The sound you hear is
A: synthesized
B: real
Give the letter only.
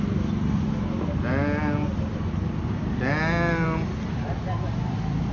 B